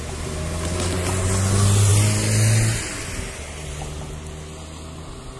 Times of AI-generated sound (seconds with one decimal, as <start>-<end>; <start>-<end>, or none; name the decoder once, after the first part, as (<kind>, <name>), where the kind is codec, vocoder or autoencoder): none